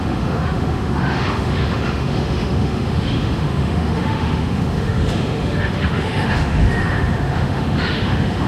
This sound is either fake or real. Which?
fake